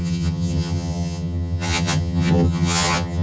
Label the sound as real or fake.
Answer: fake